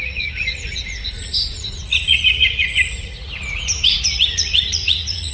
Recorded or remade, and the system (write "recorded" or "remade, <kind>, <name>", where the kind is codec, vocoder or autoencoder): remade, vocoder, Vocos